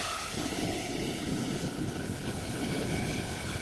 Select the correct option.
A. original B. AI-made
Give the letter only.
B